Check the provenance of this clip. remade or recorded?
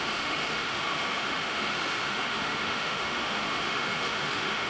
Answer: remade